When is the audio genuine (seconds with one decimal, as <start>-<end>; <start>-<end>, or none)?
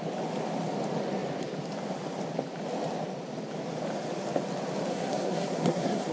0.0-4.9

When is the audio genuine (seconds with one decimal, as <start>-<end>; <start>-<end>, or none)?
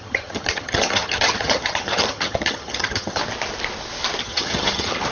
3.2-4.2